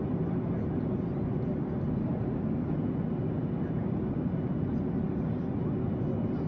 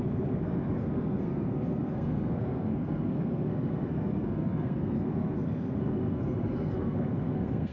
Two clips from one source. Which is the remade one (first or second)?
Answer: second